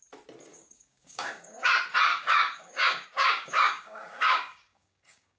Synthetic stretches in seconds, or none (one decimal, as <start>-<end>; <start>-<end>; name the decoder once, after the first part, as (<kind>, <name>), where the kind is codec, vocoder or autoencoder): 0.5-1.7 (codec, DAC); 2.1-5.4